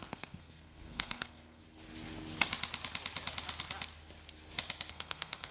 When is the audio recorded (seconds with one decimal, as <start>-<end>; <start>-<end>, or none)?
1.6-4.9